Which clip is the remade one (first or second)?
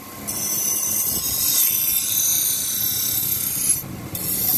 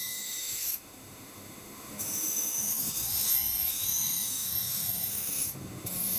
second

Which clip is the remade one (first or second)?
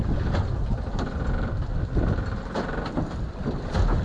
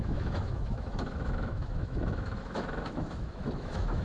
second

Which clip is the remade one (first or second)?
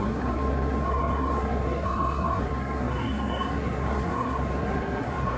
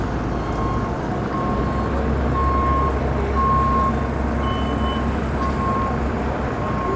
first